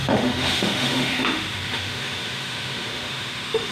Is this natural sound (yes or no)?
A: no